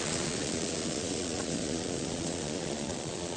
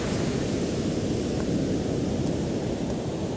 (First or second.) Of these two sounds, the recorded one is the second